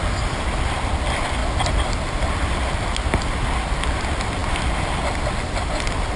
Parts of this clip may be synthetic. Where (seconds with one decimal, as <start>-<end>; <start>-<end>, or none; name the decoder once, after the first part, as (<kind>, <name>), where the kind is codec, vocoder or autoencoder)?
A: none

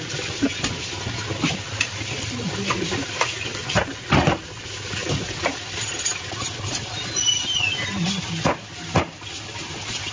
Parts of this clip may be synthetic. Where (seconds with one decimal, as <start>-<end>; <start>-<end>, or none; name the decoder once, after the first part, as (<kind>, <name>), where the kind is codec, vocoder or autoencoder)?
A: none